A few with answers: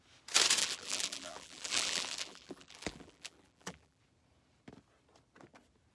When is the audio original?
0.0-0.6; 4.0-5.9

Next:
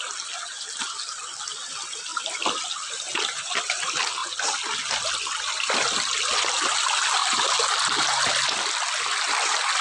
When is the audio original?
0.0-2.1; 3.6-4.2; 5.1-9.8

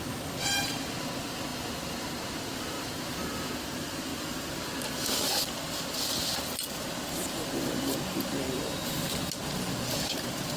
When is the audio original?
0.0-10.6

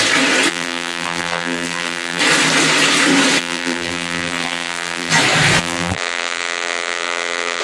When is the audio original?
0.0-0.5; 2.2-3.4; 5.1-5.6

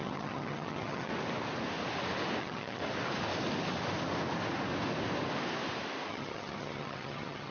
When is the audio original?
1.1-2.4; 2.8-6.1

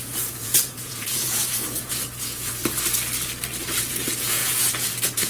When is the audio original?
2.6-3.8

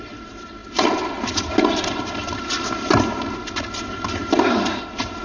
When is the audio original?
0.0-5.2

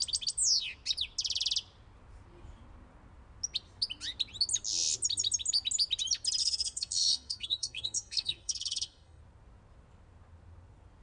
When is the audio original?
0.0-6.4; 9.2-11.0